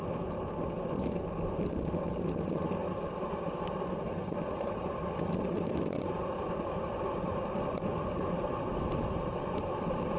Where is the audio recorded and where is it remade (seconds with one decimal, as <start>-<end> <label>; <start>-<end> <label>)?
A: 0.0-2.8 recorded; 2.8-7.3 remade; 7.3-10.2 recorded